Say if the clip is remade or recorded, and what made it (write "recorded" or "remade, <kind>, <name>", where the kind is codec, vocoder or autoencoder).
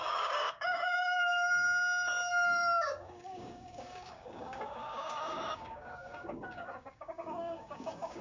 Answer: remade, codec, DAC